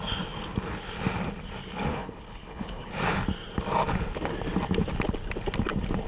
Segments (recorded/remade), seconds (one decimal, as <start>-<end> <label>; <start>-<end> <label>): 0.0-1.9 recorded; 1.9-2.9 remade; 2.9-6.1 recorded